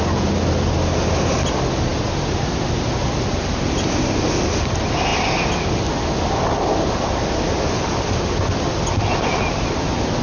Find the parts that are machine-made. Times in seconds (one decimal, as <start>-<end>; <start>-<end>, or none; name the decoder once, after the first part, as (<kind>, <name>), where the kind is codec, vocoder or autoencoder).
none